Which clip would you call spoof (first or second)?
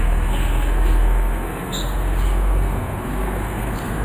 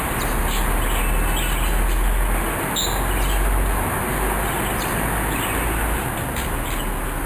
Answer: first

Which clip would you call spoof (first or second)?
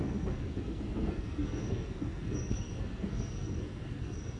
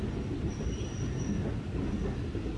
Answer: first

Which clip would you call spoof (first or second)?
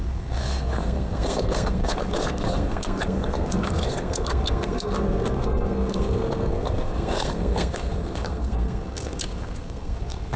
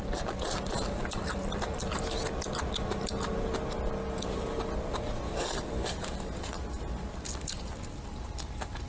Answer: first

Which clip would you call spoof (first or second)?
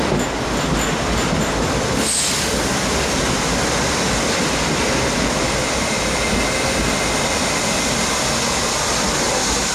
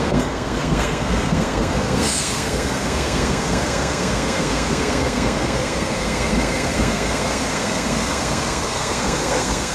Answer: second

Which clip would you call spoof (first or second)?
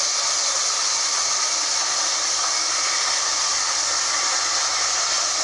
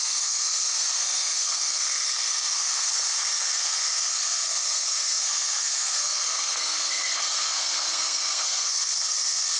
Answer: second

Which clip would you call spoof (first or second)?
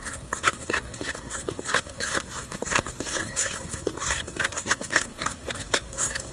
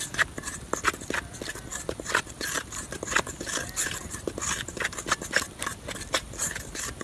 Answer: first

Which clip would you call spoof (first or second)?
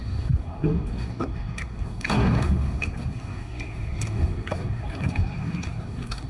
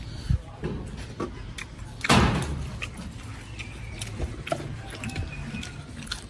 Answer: first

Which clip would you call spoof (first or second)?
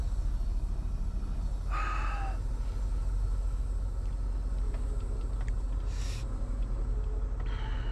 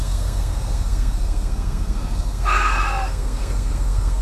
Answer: second